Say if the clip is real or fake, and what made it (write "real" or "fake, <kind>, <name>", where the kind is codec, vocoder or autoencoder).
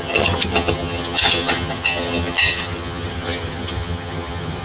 fake, vocoder, HiFi-GAN